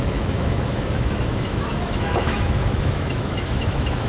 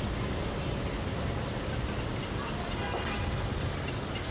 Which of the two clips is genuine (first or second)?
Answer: second